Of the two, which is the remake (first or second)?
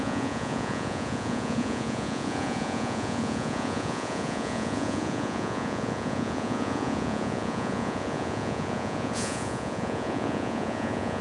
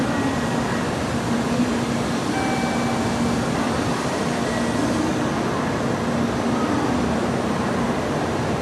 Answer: first